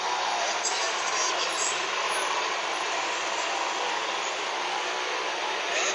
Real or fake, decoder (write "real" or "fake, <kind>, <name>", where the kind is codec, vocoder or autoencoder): real